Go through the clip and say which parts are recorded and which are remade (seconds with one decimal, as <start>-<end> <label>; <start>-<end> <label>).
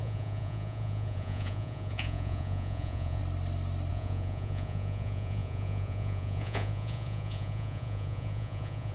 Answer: 0.0-3.2 remade; 3.2-3.9 recorded; 3.9-8.9 remade